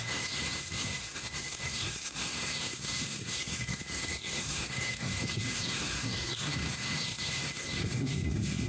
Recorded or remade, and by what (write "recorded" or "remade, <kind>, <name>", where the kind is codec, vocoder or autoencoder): remade, codec, SNAC